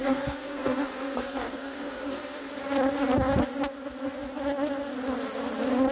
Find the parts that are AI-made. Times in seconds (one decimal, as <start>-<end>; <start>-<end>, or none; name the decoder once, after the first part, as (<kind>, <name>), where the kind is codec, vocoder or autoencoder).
0.0-2.5 (codec, SNAC)